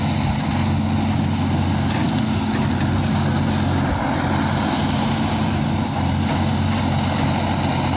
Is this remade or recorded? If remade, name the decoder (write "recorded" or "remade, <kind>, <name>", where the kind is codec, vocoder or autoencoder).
recorded